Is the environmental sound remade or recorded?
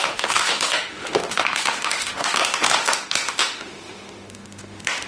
remade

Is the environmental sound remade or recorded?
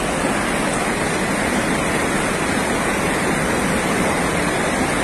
recorded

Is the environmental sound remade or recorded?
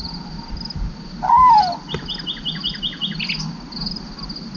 recorded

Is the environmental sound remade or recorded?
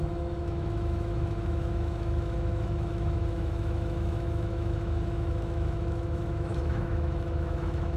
remade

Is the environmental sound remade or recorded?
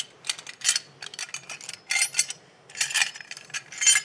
recorded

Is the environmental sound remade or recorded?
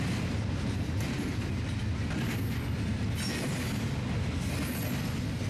recorded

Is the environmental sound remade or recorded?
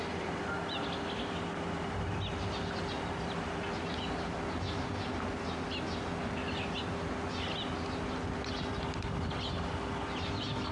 recorded